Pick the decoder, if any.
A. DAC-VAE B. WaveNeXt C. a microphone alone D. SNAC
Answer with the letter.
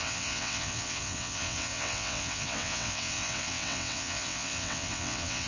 B